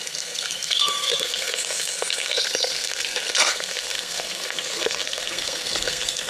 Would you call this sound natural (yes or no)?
no